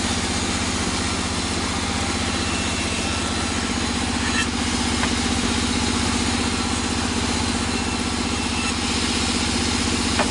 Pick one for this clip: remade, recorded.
recorded